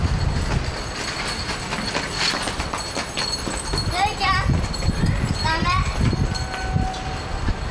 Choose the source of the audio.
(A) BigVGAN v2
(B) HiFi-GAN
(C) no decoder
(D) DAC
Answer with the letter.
C